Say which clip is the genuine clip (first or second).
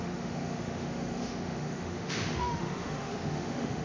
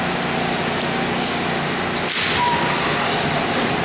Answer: second